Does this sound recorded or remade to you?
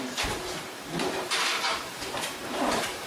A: remade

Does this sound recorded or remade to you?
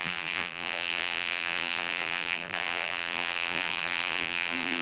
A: remade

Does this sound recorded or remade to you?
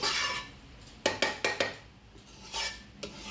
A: recorded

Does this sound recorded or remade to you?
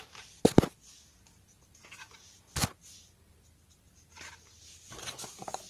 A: recorded